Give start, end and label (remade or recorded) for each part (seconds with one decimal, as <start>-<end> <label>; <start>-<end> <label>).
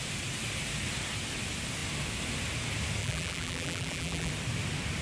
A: 0.0-3.0 recorded; 3.0-4.3 remade; 4.3-5.0 recorded